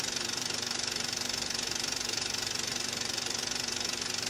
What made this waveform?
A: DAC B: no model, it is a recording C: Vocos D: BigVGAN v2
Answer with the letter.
D